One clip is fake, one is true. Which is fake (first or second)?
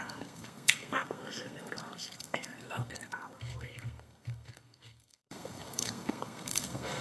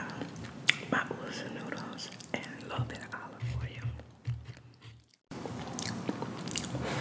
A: first